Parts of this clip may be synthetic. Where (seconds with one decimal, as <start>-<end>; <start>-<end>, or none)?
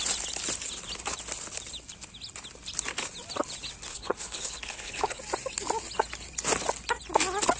3.9-5.2